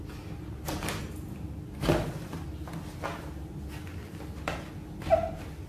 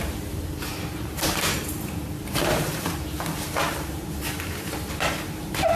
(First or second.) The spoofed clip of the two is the second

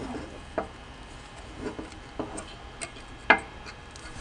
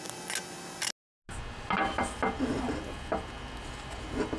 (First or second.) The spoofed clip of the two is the first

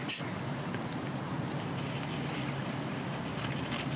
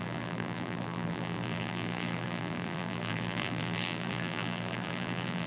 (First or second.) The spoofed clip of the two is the second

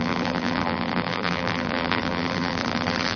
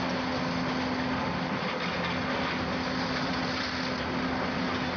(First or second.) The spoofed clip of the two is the first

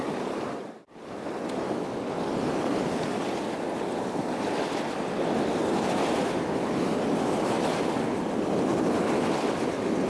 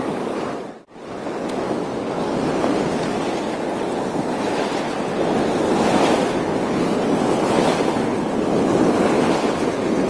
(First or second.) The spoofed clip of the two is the first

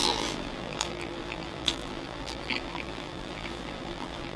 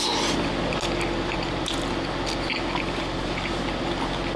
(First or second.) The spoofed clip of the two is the first